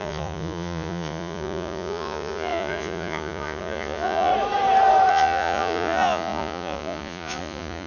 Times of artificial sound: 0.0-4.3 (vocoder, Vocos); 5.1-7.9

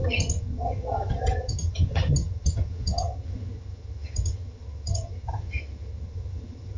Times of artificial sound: 0.0-6.8 (vocoder, HiFi-GAN)

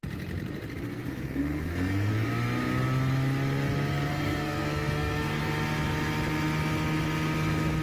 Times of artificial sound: 0.9-2.1 (codec, SNAC); 4.1-5.4

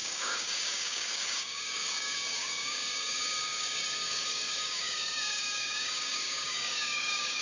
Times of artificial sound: 0.0-7.4 (codec, DAC)